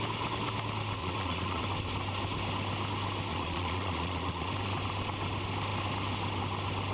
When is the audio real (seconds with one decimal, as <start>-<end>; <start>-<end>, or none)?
0.0-1.0; 1.6-3.3; 4.5-6.9